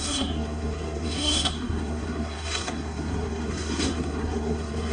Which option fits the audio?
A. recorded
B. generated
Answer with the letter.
B